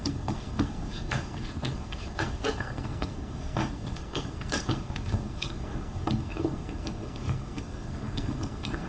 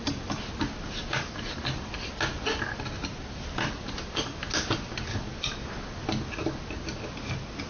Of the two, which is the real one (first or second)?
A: second